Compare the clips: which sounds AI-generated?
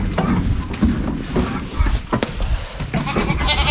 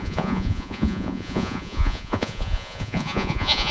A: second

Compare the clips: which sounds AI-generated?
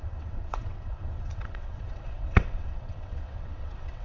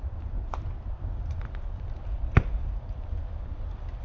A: first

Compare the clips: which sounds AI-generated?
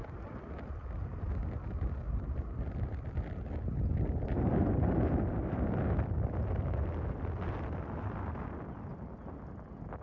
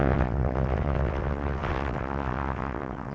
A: second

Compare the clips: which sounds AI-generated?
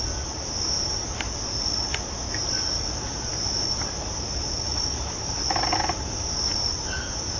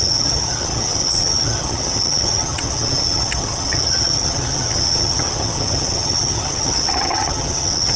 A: second